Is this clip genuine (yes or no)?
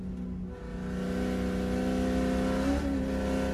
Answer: yes